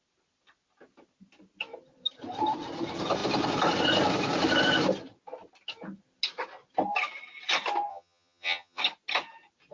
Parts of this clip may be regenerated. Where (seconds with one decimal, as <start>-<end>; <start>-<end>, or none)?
7.9-8.8